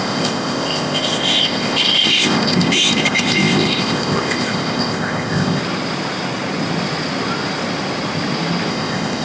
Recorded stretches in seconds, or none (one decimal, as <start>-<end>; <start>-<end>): 5.6-8.7